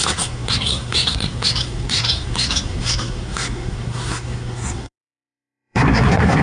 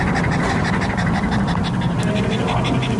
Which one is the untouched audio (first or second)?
second